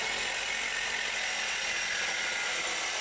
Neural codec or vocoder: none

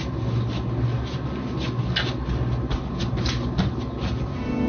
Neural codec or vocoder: none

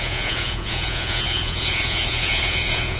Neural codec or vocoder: vocoder, Vocos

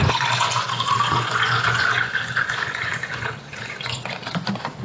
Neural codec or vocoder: vocoder, Vocos